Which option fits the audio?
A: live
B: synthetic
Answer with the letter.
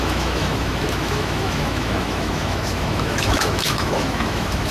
B